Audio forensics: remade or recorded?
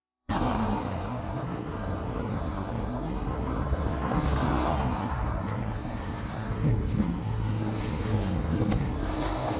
remade